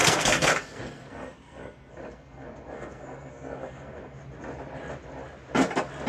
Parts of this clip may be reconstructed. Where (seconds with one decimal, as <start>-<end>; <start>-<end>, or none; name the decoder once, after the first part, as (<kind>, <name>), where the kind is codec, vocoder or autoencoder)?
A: 0.0-4.2 (codec, SNAC)